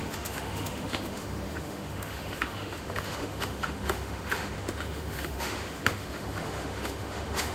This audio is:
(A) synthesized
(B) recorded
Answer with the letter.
A